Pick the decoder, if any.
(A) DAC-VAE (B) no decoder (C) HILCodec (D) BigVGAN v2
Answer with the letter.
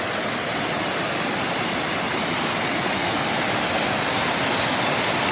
B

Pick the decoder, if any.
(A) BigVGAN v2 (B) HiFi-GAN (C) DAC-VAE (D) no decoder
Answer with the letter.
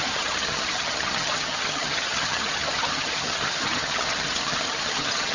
B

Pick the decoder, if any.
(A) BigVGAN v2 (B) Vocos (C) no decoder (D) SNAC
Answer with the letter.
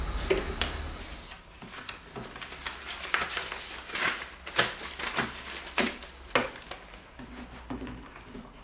C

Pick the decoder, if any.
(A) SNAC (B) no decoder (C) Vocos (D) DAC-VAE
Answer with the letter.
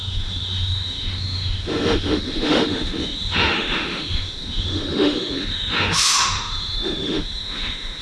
D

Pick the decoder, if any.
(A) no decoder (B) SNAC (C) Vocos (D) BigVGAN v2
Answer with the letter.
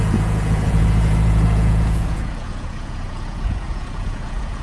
C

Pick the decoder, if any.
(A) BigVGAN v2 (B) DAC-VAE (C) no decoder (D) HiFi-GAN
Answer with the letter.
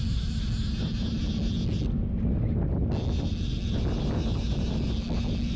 C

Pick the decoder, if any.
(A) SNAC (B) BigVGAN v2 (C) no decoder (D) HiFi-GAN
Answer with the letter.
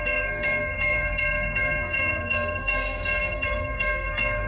A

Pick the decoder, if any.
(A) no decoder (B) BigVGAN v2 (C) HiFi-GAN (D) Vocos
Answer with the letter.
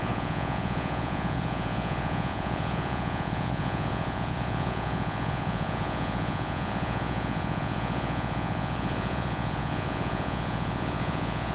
D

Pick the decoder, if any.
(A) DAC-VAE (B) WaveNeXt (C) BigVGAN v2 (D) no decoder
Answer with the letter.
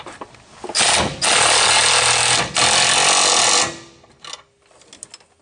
D